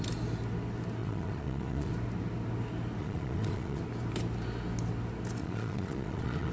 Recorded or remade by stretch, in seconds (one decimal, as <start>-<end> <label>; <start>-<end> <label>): 0.0-1.0 recorded; 1.0-1.9 remade; 1.9-3.0 recorded; 3.0-3.8 remade; 3.8-5.4 recorded; 5.4-6.5 remade